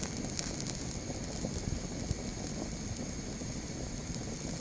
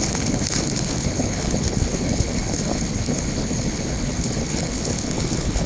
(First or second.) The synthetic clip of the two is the second